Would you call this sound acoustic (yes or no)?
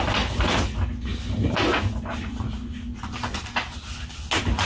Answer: yes